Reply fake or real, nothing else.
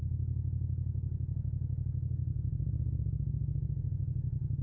real